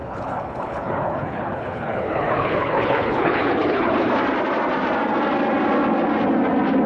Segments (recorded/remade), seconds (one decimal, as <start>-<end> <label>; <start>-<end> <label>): 0.0-4.1 remade; 4.1-6.9 recorded